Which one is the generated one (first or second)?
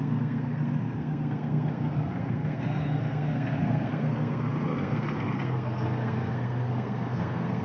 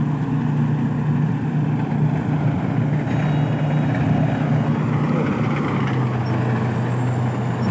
first